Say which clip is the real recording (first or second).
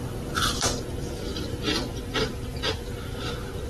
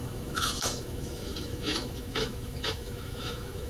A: first